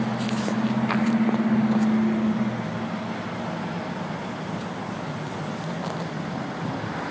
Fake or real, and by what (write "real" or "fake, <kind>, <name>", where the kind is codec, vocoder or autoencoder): real